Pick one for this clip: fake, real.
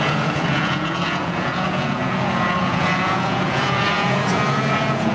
fake